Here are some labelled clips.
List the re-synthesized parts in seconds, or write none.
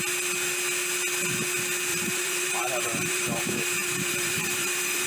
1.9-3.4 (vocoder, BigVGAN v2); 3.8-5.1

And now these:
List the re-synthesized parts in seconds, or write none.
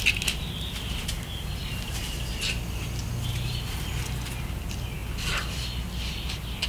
none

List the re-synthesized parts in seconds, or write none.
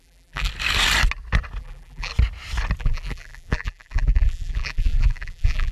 0.0-0.5 (vocoder, BigVGAN v2); 1.6-2.1; 2.8-5.7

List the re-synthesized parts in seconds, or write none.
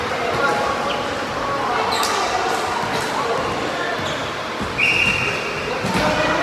none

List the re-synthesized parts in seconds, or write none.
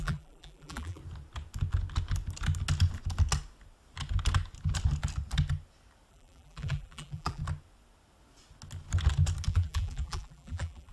0.0-1.0 (vocoder, BigVGAN v2); 6.1-7.4; 9.5-10.9